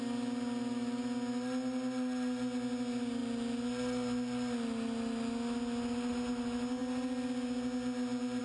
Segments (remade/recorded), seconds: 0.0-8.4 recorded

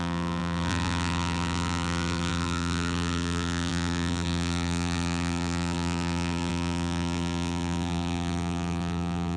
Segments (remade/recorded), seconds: 0.0-9.4 remade